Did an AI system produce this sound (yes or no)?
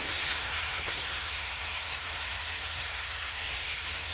yes